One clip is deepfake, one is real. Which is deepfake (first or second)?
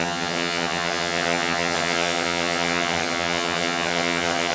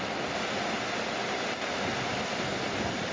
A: first